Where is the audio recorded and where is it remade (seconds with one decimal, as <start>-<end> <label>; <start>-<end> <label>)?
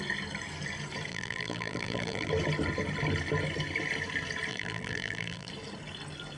0.0-1.1 recorded; 1.1-2.3 remade; 2.3-4.5 recorded; 4.5-5.5 remade; 5.5-6.4 recorded